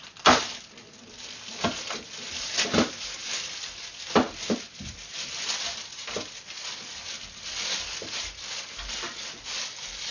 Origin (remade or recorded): recorded